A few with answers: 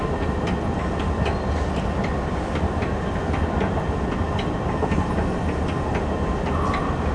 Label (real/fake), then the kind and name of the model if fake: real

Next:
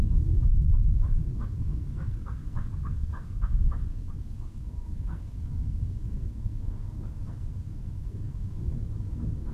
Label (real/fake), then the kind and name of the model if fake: fake, codec, SNAC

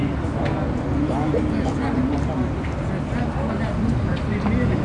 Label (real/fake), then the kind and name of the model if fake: real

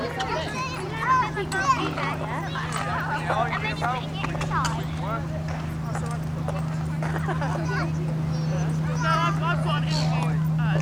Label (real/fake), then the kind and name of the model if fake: real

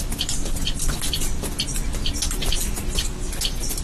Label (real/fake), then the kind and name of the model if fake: fake, vocoder, BigVGAN v2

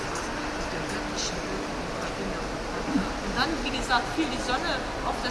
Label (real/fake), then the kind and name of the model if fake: real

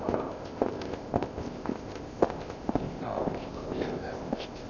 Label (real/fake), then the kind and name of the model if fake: fake, codec, ZipCodec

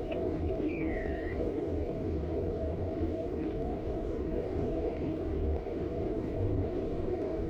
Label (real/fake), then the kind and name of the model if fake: fake, codec, DAC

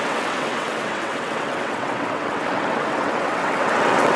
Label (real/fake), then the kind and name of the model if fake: fake, vocoder, WaveNeXt